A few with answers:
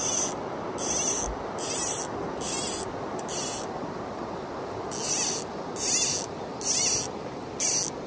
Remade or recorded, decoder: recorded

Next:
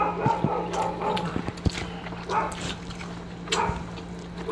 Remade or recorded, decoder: recorded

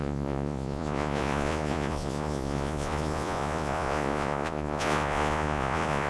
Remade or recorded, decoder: remade, vocoder, Vocos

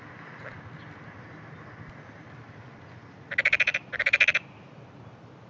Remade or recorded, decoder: recorded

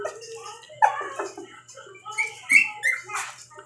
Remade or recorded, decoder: recorded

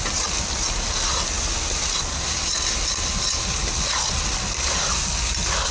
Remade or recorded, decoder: recorded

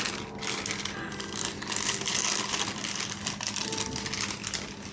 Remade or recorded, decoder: recorded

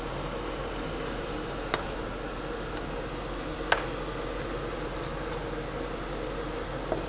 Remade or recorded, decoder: recorded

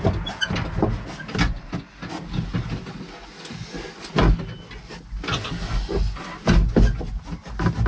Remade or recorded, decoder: recorded